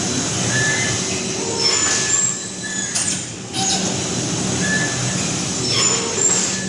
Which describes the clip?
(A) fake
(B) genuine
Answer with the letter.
B